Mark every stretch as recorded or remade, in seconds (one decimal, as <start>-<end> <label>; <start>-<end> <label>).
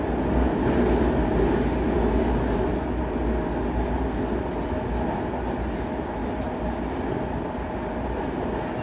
0.0-8.8 recorded